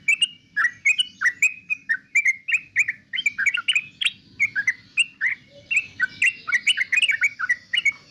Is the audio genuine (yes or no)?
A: yes